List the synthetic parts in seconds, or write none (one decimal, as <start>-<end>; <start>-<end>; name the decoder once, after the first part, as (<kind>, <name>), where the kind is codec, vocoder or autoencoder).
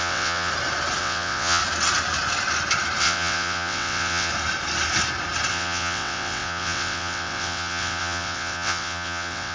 0.0-0.5 (vocoder, WaveNeXt); 1.0-1.6; 3.0-4.3; 5.5-9.5